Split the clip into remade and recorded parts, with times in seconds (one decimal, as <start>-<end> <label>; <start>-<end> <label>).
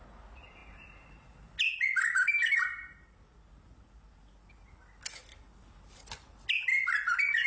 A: 0.0-7.5 recorded